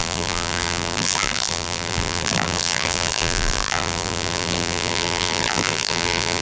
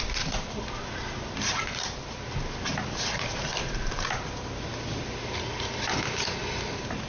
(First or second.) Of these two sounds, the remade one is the first